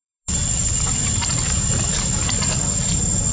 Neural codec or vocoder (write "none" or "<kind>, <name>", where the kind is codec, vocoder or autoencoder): none